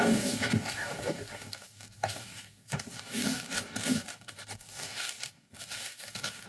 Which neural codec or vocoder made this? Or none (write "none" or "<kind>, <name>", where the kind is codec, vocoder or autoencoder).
codec, DAC